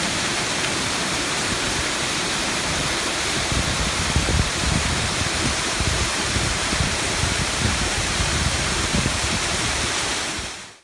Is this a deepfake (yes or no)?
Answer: yes